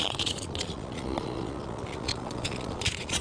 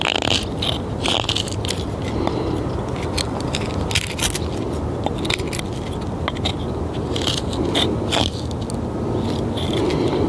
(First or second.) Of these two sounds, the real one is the second